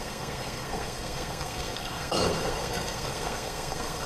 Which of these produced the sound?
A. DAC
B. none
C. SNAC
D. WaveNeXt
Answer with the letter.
C